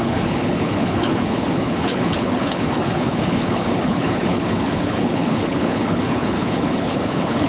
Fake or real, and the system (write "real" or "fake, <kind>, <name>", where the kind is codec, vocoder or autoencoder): fake, codec, HILCodec